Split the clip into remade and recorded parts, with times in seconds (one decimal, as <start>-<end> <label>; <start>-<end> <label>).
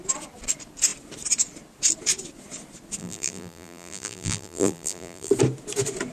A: 0.0-3.0 recorded; 3.0-5.3 remade; 5.3-6.1 recorded